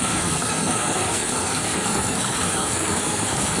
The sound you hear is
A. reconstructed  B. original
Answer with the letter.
A